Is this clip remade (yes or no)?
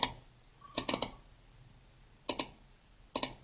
no